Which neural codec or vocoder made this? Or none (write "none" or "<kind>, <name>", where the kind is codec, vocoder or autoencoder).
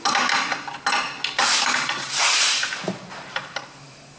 none